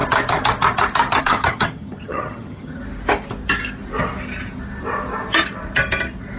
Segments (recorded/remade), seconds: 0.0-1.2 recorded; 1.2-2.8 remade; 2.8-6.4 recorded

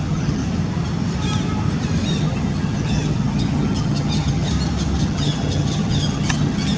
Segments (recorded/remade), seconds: 0.0-0.4 remade; 0.4-2.1 recorded; 2.1-4.5 remade; 4.5-5.0 recorded; 5.0-6.8 remade

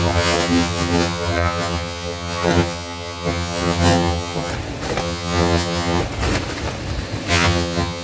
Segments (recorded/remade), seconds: 0.0-4.5 remade; 4.5-5.0 recorded; 5.0-6.0 remade; 6.0-7.3 recorded; 7.3-8.0 remade

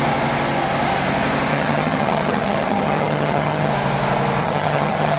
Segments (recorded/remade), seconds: 0.0-1.5 recorded; 1.5-3.7 remade; 3.7-4.4 recorded; 4.4-5.2 remade

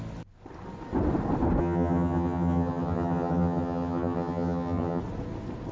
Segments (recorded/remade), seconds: 0.0-1.6 recorded; 1.6-5.0 remade; 5.0-5.7 recorded

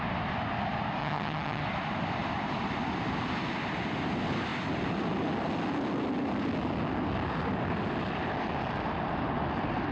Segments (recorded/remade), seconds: 0.0-1.0 recorded; 1.0-1.6 remade; 1.6-9.9 recorded

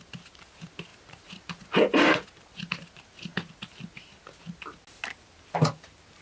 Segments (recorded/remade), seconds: 0.0-6.2 recorded

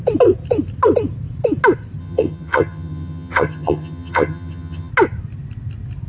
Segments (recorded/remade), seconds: 0.0-2.0 recorded; 2.0-4.9 remade; 4.9-6.1 recorded